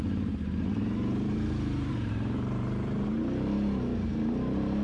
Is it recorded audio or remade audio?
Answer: remade